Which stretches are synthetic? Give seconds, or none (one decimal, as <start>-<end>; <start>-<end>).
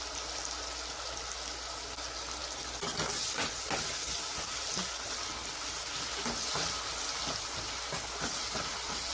none